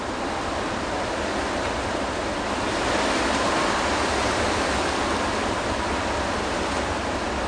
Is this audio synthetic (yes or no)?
no